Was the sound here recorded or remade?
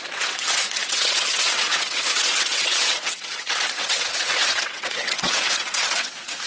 remade